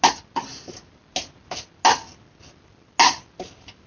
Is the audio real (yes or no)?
yes